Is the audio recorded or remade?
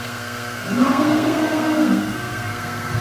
remade